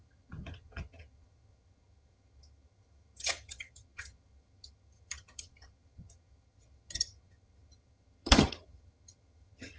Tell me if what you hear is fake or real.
fake